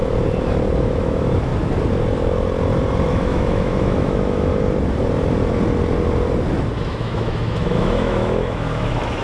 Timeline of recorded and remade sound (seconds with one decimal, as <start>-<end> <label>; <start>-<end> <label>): 0.0-0.8 recorded; 0.8-1.5 remade; 1.5-3.1 recorded; 3.1-4.5 remade; 4.5-6.8 recorded; 6.8-9.2 remade